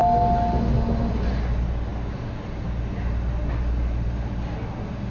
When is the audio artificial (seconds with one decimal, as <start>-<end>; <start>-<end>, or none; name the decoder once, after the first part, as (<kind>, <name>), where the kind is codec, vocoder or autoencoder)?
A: none